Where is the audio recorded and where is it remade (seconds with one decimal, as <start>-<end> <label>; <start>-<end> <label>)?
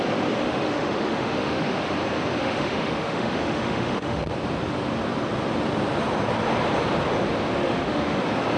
0.0-0.4 recorded; 0.4-1.9 remade; 1.9-2.4 recorded; 2.4-4.3 remade; 4.3-7.6 recorded; 7.6-8.2 remade; 8.2-8.6 recorded